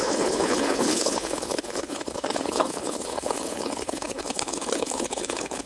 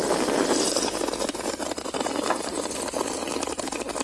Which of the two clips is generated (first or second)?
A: first